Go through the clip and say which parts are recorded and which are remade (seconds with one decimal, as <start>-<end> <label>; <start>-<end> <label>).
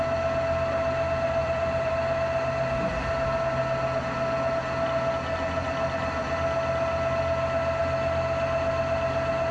0.0-1.4 recorded; 1.4-1.9 remade; 1.9-5.6 recorded; 5.6-6.3 remade; 6.3-9.5 recorded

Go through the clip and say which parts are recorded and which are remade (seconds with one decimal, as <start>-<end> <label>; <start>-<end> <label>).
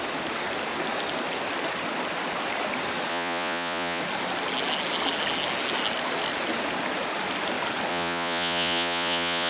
0.0-3.1 recorded; 3.1-4.0 remade; 4.0-7.9 recorded; 7.9-9.5 remade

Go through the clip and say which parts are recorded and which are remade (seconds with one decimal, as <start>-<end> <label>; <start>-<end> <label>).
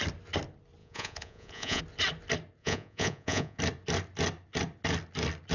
0.0-0.8 recorded; 0.8-1.8 remade; 1.8-2.6 recorded; 2.6-3.6 remade; 3.6-5.5 recorded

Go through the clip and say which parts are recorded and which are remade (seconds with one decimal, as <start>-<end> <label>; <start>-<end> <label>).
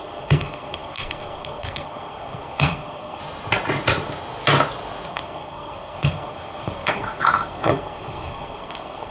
0.0-3.2 remade; 3.2-5.1 recorded; 5.1-9.1 remade